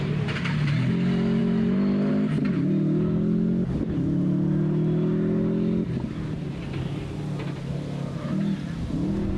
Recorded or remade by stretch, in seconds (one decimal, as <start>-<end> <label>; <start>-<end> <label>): 0.0-1.4 recorded; 1.4-2.1 remade; 2.1-9.4 recorded